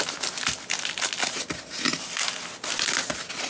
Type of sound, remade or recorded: recorded